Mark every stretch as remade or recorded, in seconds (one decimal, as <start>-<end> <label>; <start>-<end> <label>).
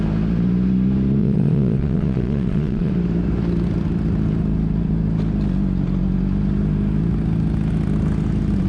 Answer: 0.0-1.2 recorded; 1.2-2.9 remade; 2.9-8.7 recorded